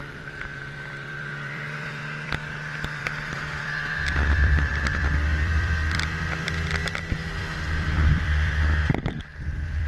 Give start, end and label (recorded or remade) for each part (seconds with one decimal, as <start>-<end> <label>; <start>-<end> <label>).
0.0-6.8 remade; 6.8-7.4 recorded; 7.4-9.9 remade